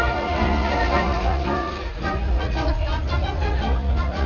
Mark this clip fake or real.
fake